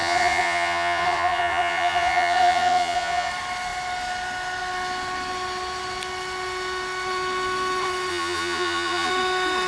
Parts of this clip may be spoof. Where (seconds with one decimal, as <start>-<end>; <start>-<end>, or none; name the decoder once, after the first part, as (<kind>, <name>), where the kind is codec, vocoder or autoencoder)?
0.0-3.3 (vocoder, Vocos); 8.1-9.1